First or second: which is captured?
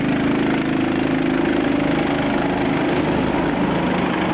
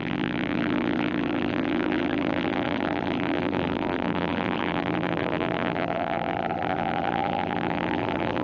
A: first